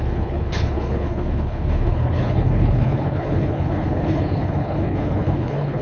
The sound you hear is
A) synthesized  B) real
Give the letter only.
A